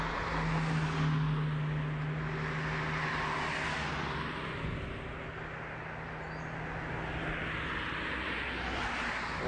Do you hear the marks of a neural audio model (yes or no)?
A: no